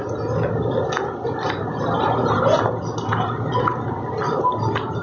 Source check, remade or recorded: recorded